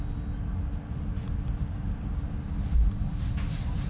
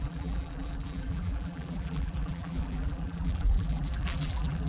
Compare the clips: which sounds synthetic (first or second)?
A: second